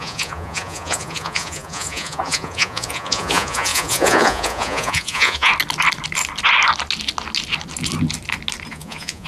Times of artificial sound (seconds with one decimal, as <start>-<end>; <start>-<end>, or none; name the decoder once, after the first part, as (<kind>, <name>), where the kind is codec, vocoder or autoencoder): 0.0-5.5 (vocoder, Vocos); 8.7-9.3